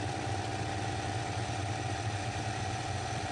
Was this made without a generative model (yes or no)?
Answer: no